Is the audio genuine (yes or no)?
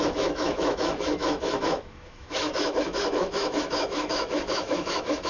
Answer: no